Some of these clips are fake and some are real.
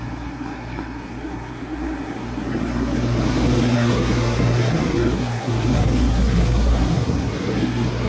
fake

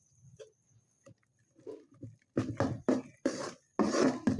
real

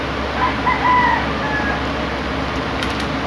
real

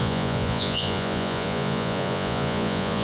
fake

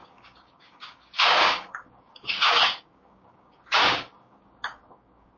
fake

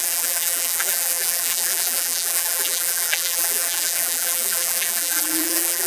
fake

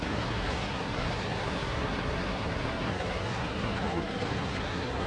fake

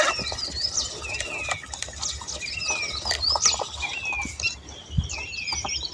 real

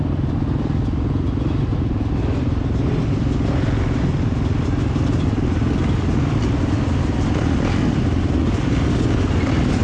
real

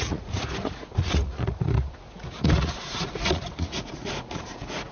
fake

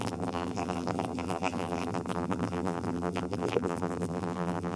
fake